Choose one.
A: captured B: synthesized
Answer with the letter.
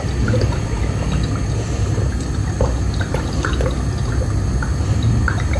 A